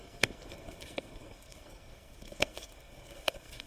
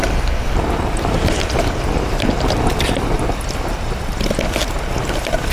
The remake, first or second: first